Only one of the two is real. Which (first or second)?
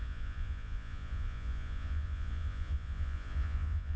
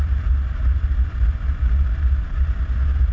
second